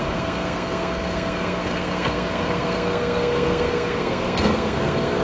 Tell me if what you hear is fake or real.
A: fake